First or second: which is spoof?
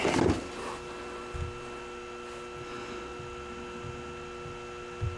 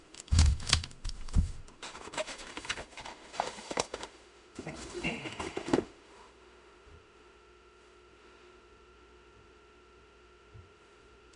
second